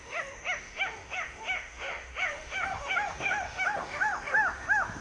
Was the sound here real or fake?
fake